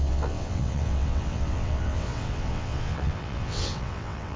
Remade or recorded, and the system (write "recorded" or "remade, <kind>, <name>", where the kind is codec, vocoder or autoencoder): remade, vocoder, WaveNeXt